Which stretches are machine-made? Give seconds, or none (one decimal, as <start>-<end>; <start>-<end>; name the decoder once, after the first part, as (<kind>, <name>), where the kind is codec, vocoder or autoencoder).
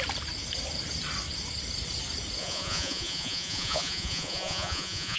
2.4-5.2 (vocoder, Vocos)